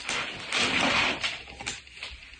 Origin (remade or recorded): recorded